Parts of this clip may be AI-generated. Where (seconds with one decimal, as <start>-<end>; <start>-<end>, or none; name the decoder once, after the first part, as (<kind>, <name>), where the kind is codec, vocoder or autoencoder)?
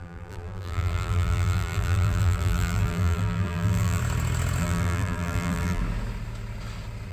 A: 0.0-4.0 (vocoder, BigVGAN v2); 4.6-5.8